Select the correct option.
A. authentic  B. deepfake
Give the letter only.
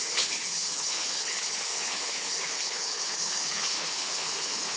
B